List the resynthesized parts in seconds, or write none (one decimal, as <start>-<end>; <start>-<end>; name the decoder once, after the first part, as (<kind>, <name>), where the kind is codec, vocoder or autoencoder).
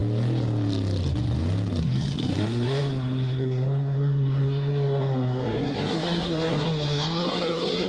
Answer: 1.8-7.9 (codec, SNAC)